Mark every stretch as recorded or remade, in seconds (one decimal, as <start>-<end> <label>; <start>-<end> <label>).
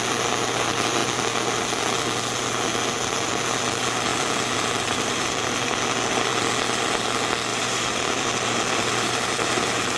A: 0.0-4.1 recorded; 4.1-5.7 remade; 5.7-7.5 recorded; 7.5-10.0 remade